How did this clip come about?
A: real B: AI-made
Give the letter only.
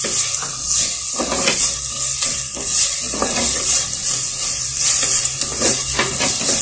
A